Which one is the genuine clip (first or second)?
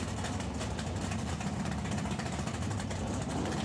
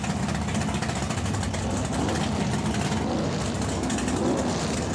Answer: second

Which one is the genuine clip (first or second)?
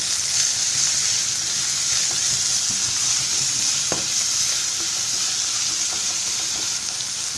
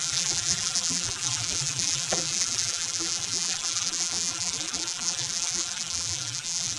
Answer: first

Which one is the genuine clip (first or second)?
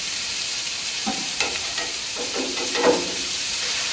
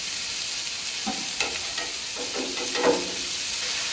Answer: second